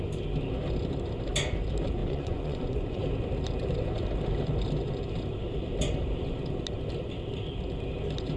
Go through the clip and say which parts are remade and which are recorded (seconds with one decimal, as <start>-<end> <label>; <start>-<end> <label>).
0.0-2.0 recorded; 2.0-3.0 remade; 3.0-8.4 recorded